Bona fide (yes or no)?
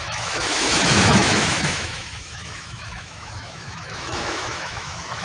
no